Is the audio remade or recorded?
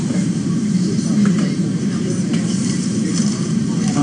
remade